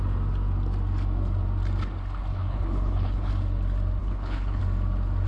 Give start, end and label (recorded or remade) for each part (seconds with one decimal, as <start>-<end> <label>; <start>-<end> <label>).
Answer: 0.0-2.3 recorded; 2.3-3.3 remade; 3.3-4.0 recorded; 4.0-4.6 remade; 4.6-5.3 recorded